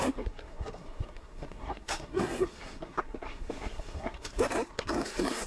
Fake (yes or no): yes